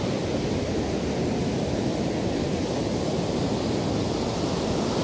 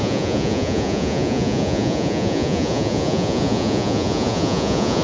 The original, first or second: first